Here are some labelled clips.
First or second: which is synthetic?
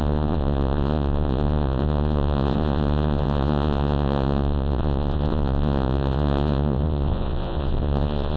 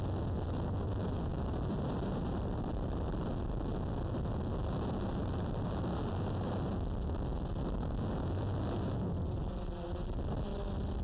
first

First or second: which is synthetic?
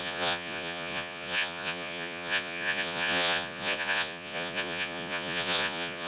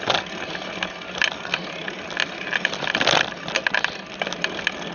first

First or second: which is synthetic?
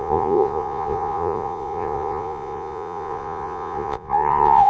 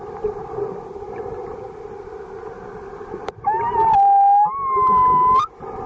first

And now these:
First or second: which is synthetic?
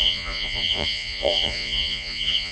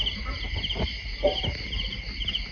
first